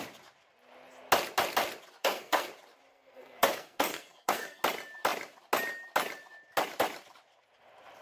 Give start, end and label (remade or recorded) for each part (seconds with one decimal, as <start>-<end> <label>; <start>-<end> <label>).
0.0-2.0 recorded; 2.0-2.5 remade; 2.5-2.9 recorded; 2.9-4.6 remade; 4.6-8.0 recorded